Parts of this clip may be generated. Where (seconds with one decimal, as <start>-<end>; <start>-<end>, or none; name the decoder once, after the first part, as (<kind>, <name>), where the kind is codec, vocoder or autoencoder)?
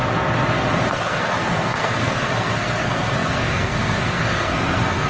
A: 0.9-5.1 (codec, SNAC)